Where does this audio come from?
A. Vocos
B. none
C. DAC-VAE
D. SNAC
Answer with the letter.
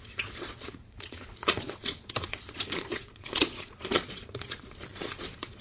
A